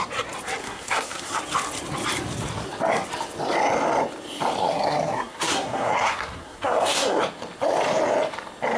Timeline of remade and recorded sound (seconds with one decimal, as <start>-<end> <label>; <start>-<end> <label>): 0.0-0.6 recorded; 0.6-1.4 remade; 1.4-4.6 recorded; 4.6-7.2 remade; 7.2-8.8 recorded